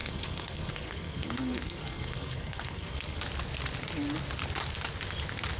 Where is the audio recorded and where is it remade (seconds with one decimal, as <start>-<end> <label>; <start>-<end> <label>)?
0.0-3.2 remade; 3.2-5.6 recorded